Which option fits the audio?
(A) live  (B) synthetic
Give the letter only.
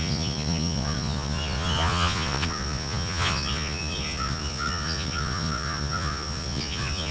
B